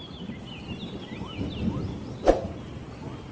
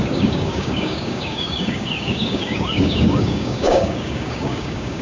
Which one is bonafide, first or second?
first